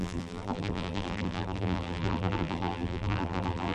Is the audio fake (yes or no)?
yes